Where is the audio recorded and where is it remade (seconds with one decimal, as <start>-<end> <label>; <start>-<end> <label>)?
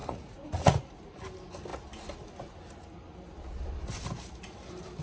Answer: 0.0-0.8 remade; 0.8-5.0 recorded